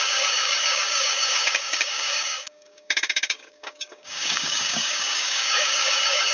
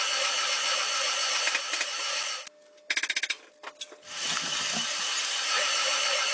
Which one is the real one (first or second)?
second